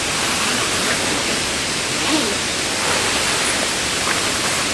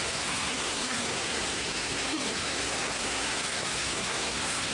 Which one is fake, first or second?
second